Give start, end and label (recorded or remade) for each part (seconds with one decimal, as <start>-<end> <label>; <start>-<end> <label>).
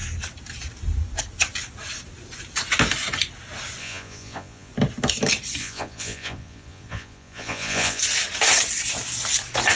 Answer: 0.0-3.8 recorded; 3.8-4.7 remade; 4.7-5.6 recorded; 5.6-8.0 remade; 8.0-9.8 recorded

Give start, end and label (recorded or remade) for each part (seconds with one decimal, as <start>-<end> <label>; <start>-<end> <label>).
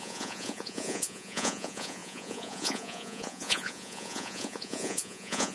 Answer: 0.0-5.5 remade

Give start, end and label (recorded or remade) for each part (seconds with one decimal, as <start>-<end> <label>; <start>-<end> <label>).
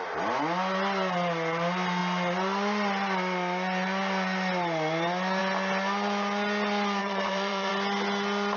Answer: 0.0-7.0 recorded; 7.0-7.7 remade; 7.7-8.6 recorded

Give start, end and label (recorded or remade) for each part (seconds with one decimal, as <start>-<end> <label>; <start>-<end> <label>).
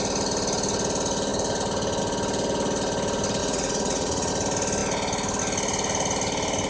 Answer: 0.0-3.4 recorded; 3.4-4.3 remade; 4.3-6.7 recorded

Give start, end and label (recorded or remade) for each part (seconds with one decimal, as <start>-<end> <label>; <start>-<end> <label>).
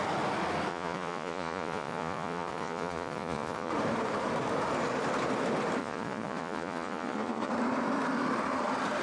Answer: 0.0-0.7 recorded; 0.7-3.7 remade; 3.7-5.8 recorded; 5.8-7.5 remade; 7.5-9.0 recorded